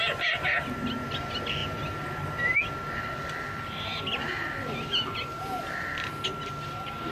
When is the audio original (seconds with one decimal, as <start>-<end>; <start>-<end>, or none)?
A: 0.0-7.1